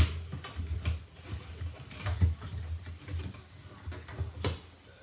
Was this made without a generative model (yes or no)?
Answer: yes